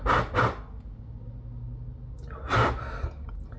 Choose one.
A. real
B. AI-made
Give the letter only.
A